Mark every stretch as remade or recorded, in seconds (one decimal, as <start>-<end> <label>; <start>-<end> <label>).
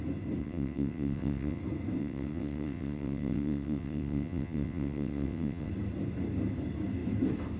0.0-0.4 recorded; 0.4-1.6 remade; 1.6-2.0 recorded; 2.0-5.7 remade; 5.7-7.6 recorded